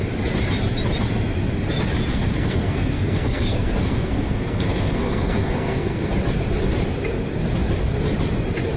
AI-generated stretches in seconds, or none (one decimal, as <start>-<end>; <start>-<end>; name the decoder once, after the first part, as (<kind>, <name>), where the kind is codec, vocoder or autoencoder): 2.1-6.1 (codec, SNAC)